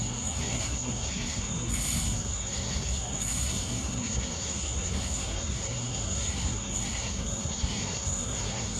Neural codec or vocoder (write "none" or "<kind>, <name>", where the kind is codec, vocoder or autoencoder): codec, SNAC